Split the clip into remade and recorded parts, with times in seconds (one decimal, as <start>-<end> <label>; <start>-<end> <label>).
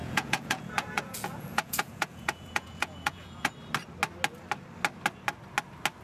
0.0-3.5 remade; 3.5-6.0 recorded